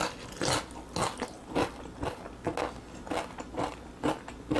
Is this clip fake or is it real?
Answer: real